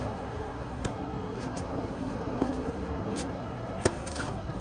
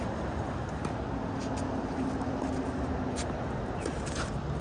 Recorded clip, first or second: second